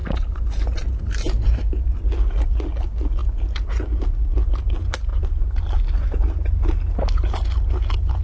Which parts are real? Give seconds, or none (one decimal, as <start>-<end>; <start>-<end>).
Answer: 2.0-5.1; 5.6-8.2